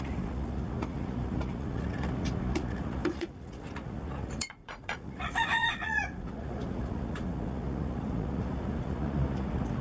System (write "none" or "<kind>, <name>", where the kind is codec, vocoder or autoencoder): vocoder, Vocos